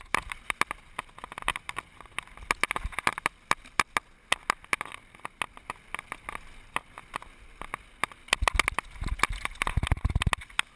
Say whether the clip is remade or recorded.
recorded